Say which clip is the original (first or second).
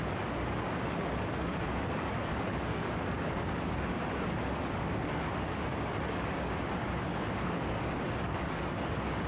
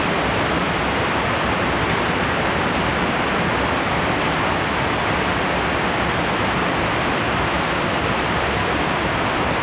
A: second